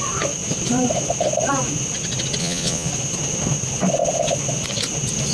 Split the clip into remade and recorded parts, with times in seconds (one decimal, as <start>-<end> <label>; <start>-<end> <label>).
0.0-2.4 recorded; 2.4-2.9 remade; 2.9-5.3 recorded